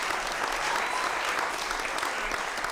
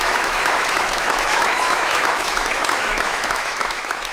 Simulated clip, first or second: second